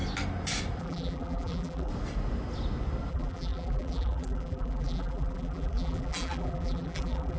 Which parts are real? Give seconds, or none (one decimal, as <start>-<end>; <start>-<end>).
0.0-0.8; 1.9-3.1